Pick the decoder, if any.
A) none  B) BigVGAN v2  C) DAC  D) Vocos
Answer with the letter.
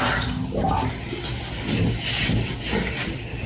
A